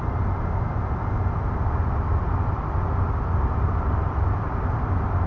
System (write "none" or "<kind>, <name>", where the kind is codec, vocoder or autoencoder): none